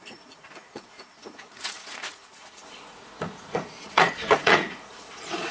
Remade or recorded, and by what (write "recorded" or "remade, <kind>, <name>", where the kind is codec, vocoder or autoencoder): remade, vocoder, Vocos